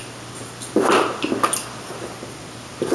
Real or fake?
real